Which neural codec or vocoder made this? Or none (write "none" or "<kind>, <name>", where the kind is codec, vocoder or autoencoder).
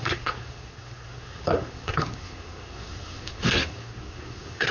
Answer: codec, SNAC